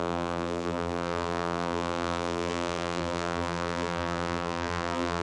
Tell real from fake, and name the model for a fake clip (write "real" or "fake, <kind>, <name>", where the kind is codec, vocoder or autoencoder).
fake, vocoder, BigVGAN v2